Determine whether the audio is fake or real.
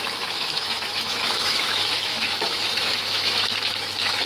fake